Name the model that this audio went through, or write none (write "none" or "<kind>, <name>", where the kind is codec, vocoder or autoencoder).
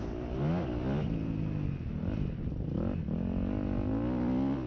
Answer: none